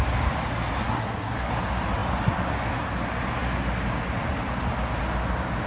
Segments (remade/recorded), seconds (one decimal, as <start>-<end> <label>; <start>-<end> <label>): 0.0-0.8 recorded; 0.8-1.5 remade; 1.5-5.7 recorded